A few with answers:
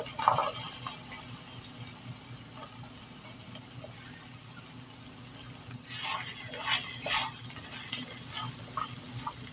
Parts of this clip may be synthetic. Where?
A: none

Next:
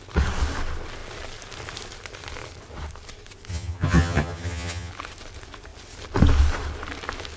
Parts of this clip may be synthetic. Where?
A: 3.5-4.9